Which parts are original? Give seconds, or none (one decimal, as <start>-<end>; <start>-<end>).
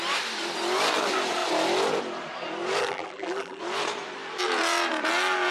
0.0-2.8; 3.6-5.5